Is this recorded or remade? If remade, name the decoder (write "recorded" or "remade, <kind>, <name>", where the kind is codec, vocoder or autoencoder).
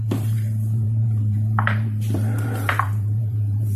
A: remade, vocoder, BigVGAN v2